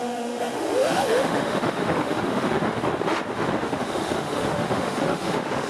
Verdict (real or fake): fake